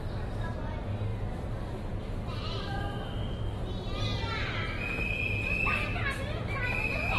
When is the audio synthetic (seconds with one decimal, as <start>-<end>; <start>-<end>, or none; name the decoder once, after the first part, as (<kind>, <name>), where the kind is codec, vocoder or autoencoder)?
none